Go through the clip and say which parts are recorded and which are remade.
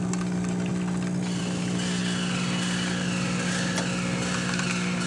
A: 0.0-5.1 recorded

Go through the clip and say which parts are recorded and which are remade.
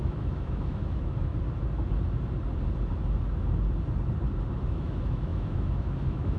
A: 0.0-1.3 remade; 1.3-4.7 recorded; 4.7-6.4 remade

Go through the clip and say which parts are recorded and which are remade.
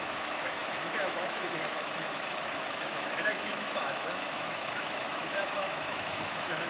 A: 0.0-6.7 remade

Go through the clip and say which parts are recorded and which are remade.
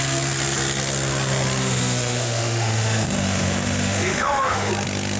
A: 0.0-1.6 recorded; 1.6-4.7 remade; 4.7-5.2 recorded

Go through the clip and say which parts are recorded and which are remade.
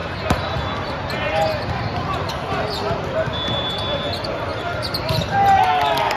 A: 0.0-6.2 recorded